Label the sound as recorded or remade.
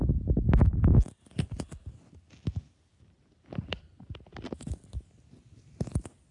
recorded